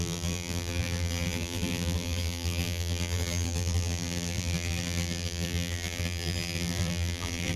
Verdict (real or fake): fake